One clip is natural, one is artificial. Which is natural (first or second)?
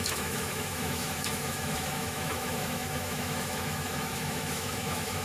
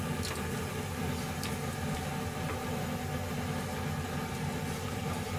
second